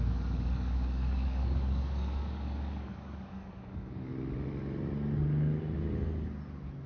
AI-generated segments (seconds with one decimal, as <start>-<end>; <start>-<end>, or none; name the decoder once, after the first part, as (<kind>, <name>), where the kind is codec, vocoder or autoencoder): 0.0-4.1 (codec, DAC)